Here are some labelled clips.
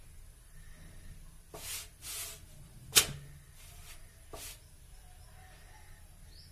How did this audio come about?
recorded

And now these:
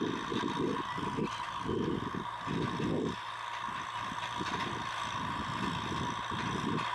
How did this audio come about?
recorded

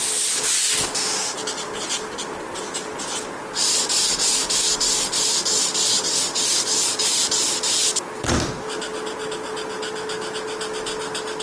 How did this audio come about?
recorded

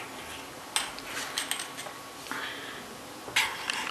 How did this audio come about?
recorded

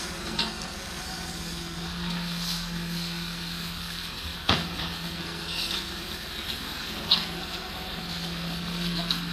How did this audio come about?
remade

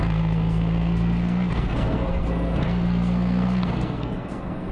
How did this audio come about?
remade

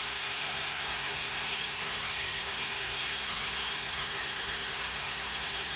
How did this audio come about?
remade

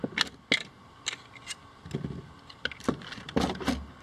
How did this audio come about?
recorded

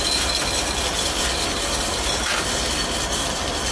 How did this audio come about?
recorded